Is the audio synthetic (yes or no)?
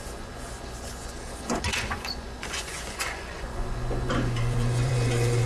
yes